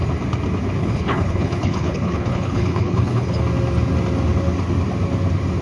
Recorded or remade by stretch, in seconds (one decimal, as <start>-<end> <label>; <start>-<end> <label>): 0.0-0.8 recorded; 0.8-3.4 remade; 3.4-5.6 recorded